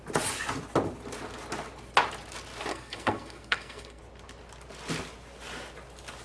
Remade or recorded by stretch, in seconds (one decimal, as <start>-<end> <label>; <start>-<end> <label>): 0.0-2.7 recorded; 2.7-4.0 remade; 4.0-6.2 recorded